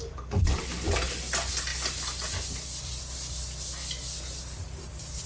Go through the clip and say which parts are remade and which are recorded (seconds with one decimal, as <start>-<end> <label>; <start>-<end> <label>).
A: 0.0-5.3 recorded

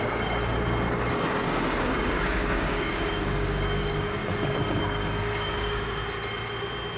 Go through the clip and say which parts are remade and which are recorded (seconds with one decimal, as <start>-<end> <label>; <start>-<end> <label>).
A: 0.0-0.4 remade; 0.4-0.9 recorded; 0.9-4.2 remade; 4.2-4.8 recorded; 4.8-6.0 remade; 6.0-7.0 recorded

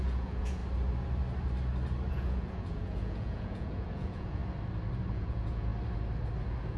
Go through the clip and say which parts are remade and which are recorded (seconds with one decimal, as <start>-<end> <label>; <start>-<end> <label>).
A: 0.0-0.6 remade; 0.6-2.1 recorded; 2.1-4.4 remade; 4.4-5.1 recorded; 5.1-5.7 remade; 5.7-6.8 recorded